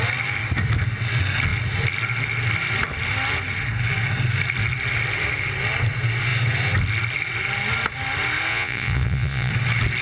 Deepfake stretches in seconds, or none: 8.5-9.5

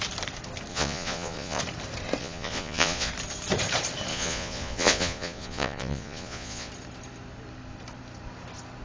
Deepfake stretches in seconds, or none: 0.7-1.6; 2.2-3.1; 4.1-6.7

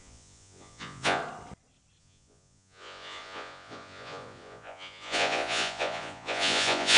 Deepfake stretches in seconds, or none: 0.0-1.2; 2.0-7.0

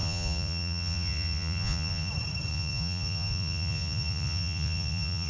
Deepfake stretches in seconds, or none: 0.0-2.1; 2.5-5.3